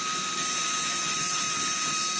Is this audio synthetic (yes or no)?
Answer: no